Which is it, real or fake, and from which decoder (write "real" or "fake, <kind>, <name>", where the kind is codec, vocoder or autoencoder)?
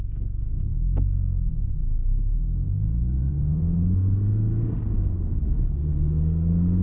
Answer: fake, codec, SNAC